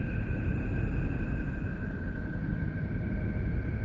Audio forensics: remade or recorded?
recorded